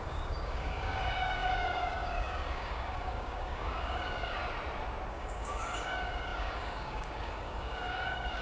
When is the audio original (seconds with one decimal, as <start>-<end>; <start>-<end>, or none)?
4.4-5.1